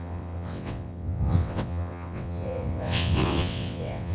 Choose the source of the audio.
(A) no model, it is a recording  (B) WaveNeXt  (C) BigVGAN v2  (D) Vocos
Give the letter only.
B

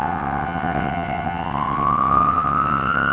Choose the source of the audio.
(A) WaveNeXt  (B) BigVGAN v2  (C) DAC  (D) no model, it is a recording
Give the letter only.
A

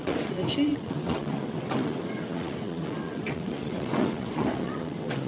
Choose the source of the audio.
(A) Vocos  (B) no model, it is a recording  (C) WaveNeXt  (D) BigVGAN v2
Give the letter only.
C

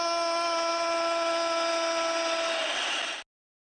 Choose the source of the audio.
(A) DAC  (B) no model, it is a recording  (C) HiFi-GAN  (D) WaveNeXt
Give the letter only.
B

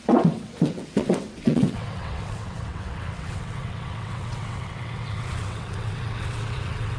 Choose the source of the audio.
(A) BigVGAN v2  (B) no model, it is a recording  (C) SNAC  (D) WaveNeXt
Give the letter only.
D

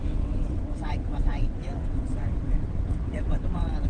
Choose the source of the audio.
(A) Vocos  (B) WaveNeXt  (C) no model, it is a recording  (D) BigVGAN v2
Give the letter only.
B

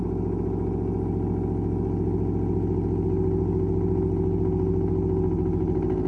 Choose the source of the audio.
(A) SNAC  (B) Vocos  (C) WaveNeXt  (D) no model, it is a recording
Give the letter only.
D